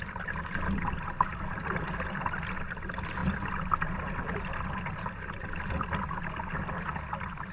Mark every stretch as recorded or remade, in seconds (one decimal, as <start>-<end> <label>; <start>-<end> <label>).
0.0-7.5 recorded